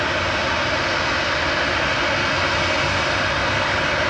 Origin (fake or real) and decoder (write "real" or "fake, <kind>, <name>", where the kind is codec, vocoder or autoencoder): real